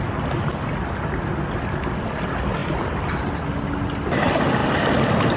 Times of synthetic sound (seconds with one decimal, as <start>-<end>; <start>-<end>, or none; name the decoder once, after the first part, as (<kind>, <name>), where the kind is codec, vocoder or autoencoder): 4.6-5.4 (vocoder, BigVGAN v2)